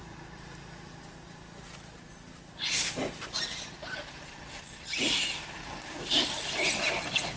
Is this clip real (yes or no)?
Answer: yes